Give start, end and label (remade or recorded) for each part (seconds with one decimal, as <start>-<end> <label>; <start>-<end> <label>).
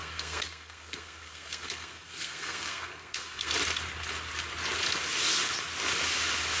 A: 0.0-3.5 remade; 3.5-6.6 recorded